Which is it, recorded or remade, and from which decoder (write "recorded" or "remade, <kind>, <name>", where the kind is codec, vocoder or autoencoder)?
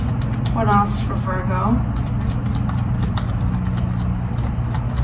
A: recorded